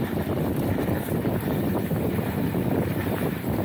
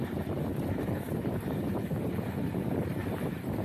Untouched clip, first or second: first